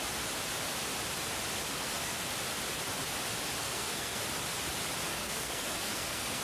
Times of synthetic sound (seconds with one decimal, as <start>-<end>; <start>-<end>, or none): 1.7-2.2; 3.6-4.2; 5.1-6.4